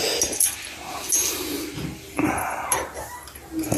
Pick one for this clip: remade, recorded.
recorded